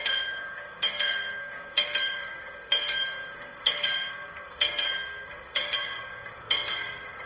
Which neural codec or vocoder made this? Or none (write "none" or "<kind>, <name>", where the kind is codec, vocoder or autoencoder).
codec, SNAC